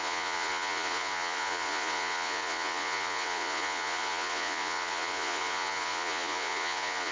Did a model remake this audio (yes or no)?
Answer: yes